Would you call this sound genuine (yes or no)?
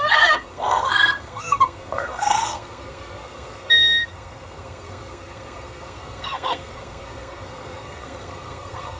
no